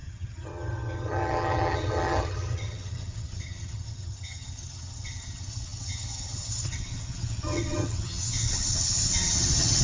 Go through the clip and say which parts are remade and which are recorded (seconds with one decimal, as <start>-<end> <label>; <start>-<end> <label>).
0.0-9.8 remade